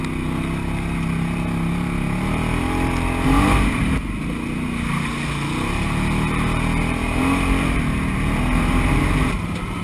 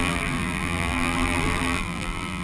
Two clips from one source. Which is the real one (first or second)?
first